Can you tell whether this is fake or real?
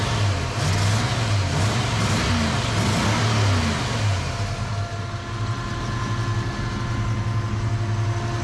real